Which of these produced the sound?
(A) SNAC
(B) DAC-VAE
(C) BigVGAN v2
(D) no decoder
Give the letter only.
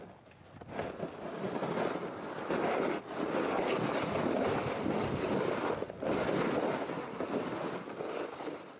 D